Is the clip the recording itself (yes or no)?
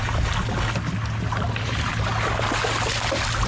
yes